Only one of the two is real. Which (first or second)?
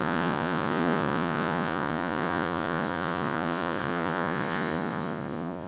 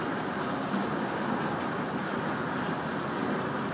second